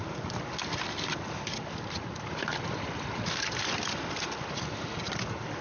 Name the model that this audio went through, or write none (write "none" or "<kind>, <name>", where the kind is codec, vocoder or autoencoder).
none